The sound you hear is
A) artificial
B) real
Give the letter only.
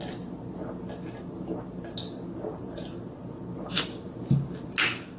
B